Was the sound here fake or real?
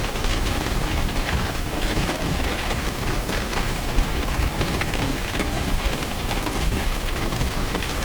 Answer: fake